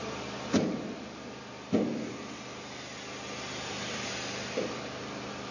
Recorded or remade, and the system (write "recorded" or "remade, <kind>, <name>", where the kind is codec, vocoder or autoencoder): recorded